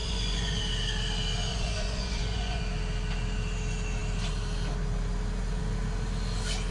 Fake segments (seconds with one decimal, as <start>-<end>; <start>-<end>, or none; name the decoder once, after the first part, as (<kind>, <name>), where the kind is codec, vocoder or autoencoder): 0.0-0.6 (vocoder, Vocos); 1.5-2.6